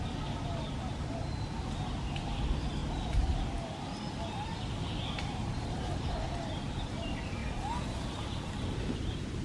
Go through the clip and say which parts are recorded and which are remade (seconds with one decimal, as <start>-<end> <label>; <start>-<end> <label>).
0.0-9.4 recorded